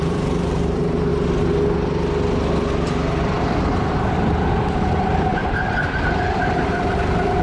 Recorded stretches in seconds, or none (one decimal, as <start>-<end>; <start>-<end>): 1.1-4.7